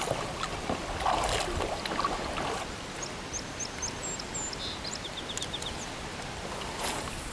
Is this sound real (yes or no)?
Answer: yes